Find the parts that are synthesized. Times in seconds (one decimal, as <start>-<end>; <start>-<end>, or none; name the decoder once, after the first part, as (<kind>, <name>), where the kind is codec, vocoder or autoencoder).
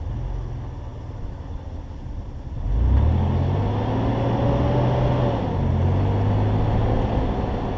none